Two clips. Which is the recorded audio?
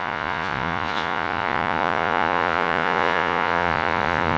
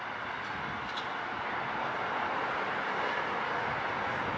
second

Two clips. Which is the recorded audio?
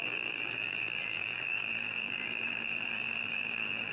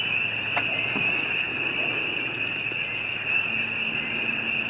second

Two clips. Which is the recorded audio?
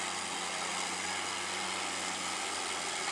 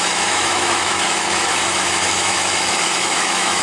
first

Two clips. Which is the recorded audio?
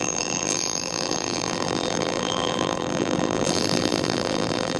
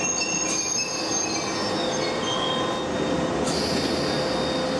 second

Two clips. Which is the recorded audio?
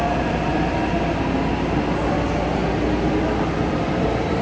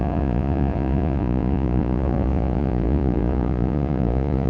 first